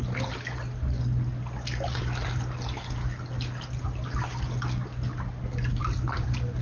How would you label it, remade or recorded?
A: recorded